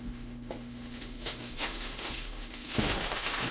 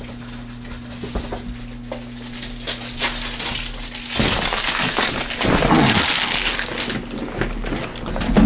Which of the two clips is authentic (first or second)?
second